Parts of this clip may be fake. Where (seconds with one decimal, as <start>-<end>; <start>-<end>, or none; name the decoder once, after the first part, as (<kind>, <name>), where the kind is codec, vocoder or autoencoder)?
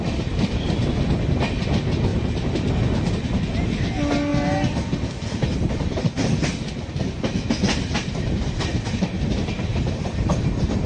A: 2.1-2.7 (vocoder, BigVGAN v2)